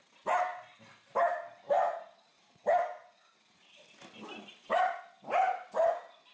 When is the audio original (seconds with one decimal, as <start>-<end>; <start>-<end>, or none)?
0.0-6.3